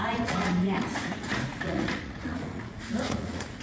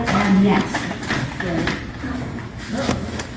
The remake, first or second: first